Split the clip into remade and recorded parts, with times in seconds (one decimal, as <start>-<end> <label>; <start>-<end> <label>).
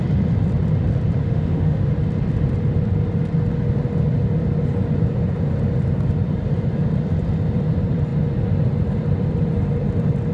0.0-1.2 recorded; 1.2-1.9 remade; 1.9-10.3 recorded